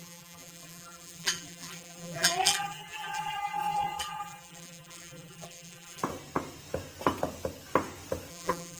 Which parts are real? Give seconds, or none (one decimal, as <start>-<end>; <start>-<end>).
6.0-8.3